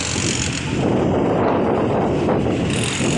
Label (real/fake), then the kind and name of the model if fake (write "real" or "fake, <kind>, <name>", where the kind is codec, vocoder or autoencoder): real